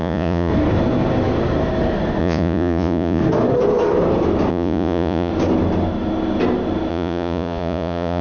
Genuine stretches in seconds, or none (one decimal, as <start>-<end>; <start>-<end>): 0.5-2.2; 3.2-4.5; 5.3-6.9